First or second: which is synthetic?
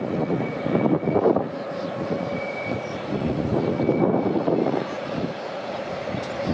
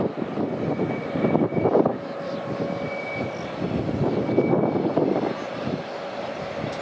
first